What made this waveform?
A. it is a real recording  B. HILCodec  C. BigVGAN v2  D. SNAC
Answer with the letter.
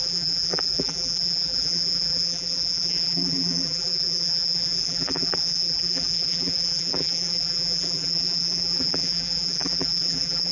C